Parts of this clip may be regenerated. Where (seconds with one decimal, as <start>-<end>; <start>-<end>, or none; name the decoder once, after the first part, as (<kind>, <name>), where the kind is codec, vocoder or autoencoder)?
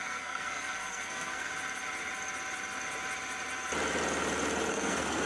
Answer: 0.0-1.5 (codec, SNAC); 4.7-5.3